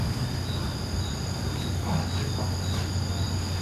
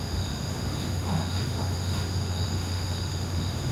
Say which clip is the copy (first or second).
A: second